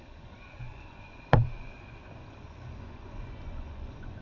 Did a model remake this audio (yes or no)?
yes